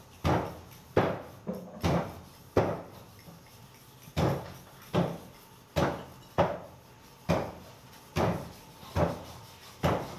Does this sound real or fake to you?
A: real